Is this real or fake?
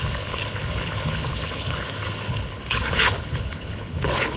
fake